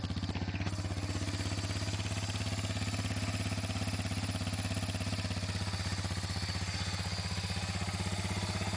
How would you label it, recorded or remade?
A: recorded